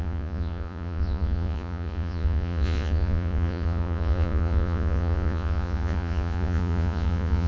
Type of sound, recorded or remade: remade